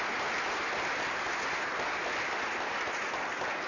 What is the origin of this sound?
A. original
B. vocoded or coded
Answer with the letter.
A